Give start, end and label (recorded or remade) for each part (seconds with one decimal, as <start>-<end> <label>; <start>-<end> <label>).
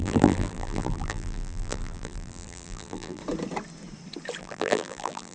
0.0-3.2 remade; 3.2-4.4 recorded; 4.4-5.3 remade